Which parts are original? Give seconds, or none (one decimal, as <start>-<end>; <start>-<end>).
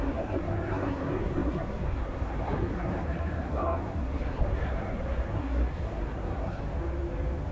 6.6-7.5